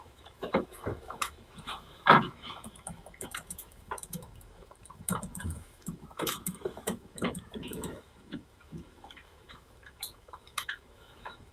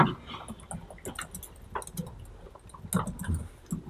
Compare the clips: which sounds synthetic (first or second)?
first